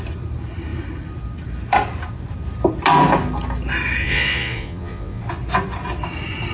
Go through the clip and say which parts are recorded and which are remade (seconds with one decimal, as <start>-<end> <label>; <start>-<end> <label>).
0.0-4.0 recorded; 4.0-5.2 remade; 5.2-6.5 recorded